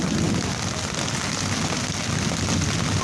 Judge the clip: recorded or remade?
recorded